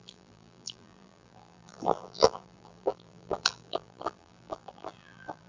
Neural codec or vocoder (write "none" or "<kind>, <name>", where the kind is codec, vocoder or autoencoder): vocoder, BigVGAN v2